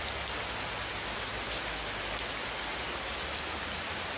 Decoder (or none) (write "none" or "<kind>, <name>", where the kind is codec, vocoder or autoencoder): none